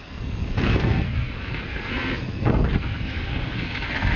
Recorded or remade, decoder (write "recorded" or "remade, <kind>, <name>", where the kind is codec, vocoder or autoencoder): remade, codec, SNAC